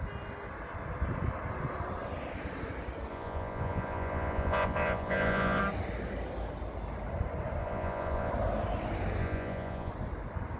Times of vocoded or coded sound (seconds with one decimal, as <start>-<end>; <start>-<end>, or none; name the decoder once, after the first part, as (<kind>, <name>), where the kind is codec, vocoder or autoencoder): 3.1-5.6 (vocoder, Vocos); 7.6-8.3; 9.2-9.9